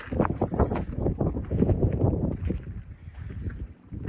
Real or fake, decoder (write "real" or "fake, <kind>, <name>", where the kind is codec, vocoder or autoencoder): fake, vocoder, BigVGAN v2